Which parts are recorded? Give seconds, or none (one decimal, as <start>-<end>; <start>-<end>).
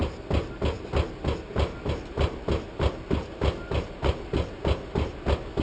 0.0-5.6